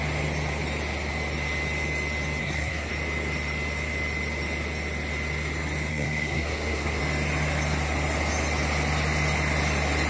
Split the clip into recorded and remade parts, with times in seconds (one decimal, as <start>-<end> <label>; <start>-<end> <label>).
0.0-2.4 recorded; 2.4-2.9 remade; 2.9-5.9 recorded; 5.9-7.0 remade; 7.0-10.1 recorded